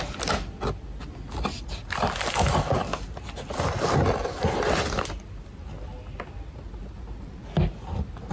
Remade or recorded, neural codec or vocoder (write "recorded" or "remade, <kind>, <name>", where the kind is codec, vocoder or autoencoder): recorded